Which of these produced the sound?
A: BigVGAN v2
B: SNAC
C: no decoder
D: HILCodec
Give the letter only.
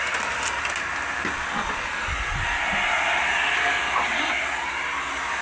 C